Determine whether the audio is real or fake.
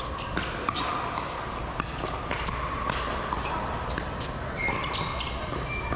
real